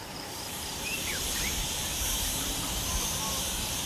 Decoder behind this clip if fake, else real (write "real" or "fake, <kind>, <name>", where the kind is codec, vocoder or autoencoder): fake, vocoder, BigVGAN v2